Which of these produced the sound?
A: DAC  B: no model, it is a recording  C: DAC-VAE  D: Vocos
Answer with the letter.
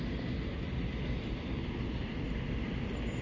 B